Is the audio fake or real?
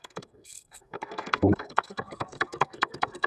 fake